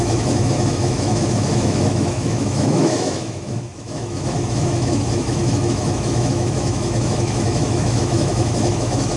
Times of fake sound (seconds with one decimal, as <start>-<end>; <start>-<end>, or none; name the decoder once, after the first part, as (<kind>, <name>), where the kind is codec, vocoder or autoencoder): 0.0-9.2 (autoencoder, DAC-VAE)